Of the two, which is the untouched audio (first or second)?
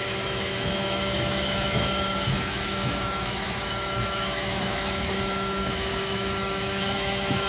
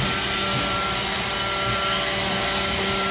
second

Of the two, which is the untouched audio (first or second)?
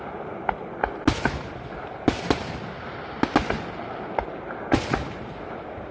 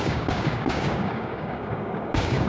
first